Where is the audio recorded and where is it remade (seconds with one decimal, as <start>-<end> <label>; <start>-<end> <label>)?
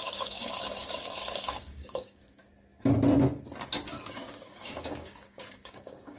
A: 0.0-2.4 remade; 2.4-4.1 recorded; 4.1-6.2 remade